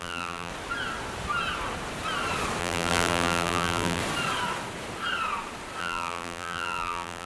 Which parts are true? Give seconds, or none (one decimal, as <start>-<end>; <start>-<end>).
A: 0.5-2.6; 4.0-5.8